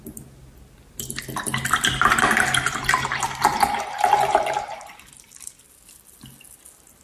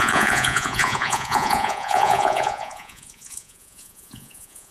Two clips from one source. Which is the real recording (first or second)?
first